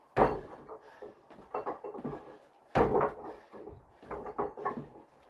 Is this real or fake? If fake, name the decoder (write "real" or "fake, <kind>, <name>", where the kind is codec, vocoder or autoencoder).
real